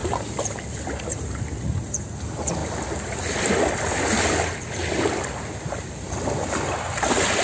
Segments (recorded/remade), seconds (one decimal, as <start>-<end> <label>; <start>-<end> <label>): 0.0-0.5 remade; 0.5-1.1 recorded; 1.1-2.0 remade; 2.0-7.4 recorded